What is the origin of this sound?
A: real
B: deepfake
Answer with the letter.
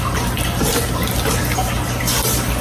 A